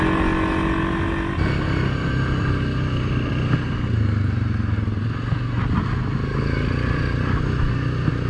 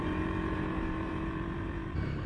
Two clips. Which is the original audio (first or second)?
first